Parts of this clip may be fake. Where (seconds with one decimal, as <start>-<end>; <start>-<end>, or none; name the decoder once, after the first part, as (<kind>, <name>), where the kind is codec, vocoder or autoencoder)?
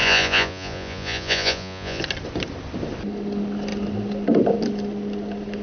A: 0.0-2.0 (vocoder, Vocos)